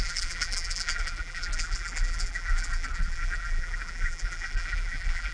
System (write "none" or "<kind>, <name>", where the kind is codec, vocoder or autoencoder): vocoder, BigVGAN v2